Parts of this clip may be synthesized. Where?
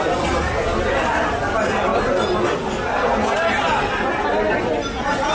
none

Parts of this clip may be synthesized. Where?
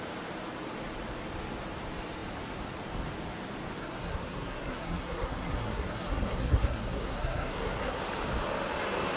3.8-8.0 (codec, SNAC)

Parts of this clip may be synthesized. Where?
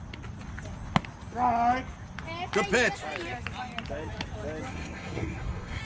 4.7-5.8 (codec, SNAC)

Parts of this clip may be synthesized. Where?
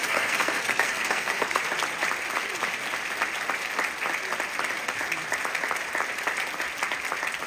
0.0-1.6 (codec, SNAC)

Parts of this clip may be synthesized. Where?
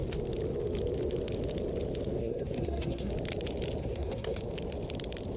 2.2-3.1 (codec, SNAC); 3.8-4.4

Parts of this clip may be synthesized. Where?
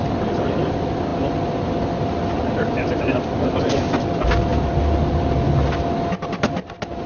none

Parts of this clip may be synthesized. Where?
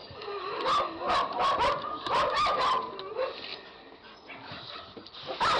none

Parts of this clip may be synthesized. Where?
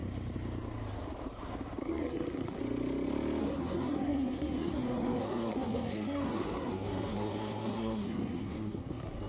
1.8-2.6 (codec, SNAC); 3.4-9.3